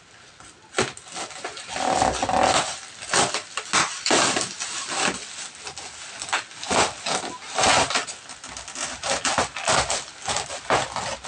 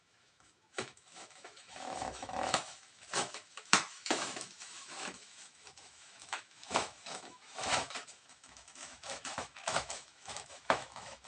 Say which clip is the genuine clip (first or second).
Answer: first